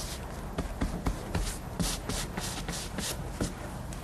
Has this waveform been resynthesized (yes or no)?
no